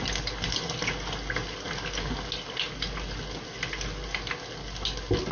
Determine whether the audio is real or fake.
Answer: real